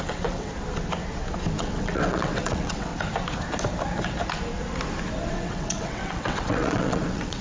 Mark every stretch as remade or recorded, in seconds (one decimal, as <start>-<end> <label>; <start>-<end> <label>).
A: 0.0-0.5 remade; 0.5-1.6 recorded; 1.6-2.9 remade; 2.9-5.3 recorded; 5.3-7.4 remade